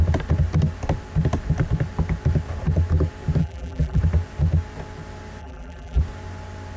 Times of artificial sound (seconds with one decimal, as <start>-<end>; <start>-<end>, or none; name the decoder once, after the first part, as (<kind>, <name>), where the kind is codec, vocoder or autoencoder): 3.4-4.0 (vocoder, BigVGAN v2); 5.4-6.0